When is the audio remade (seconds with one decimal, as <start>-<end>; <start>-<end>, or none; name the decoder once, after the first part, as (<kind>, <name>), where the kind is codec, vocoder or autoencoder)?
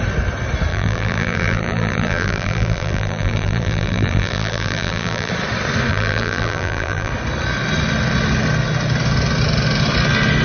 0.7-5.3 (vocoder, BigVGAN v2); 5.9-7.1